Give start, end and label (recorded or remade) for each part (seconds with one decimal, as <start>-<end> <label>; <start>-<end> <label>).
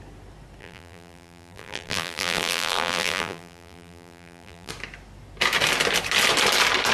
0.0-0.6 recorded; 0.6-4.7 remade; 4.7-6.9 recorded